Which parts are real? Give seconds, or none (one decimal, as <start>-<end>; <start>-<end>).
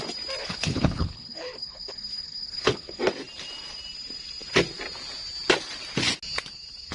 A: 0.0-0.4; 3.0-6.9